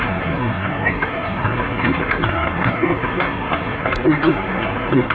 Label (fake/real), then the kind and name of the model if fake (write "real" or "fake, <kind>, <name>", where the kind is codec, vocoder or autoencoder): fake, codec, SNAC